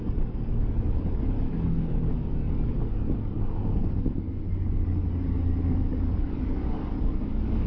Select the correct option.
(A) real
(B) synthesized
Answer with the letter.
B